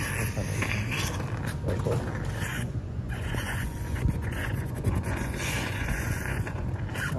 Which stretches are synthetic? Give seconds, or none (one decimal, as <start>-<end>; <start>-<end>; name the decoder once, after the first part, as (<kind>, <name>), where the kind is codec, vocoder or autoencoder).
2.5-6.8 (vocoder, Vocos)